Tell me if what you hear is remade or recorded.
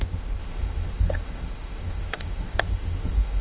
remade